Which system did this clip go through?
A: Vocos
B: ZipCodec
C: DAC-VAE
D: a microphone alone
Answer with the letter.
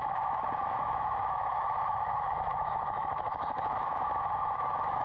C